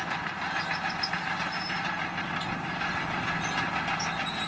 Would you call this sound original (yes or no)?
yes